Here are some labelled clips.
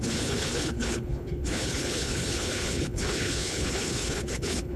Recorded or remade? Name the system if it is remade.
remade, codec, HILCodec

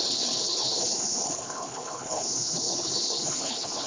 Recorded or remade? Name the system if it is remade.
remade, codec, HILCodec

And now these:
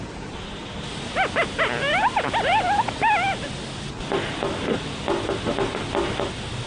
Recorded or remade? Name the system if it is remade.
recorded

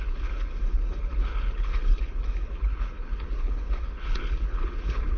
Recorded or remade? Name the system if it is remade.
remade, codec, HILCodec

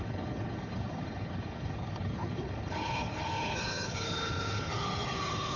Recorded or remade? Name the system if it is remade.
remade, codec, HILCodec